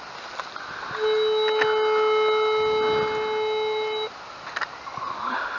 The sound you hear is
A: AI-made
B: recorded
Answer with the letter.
B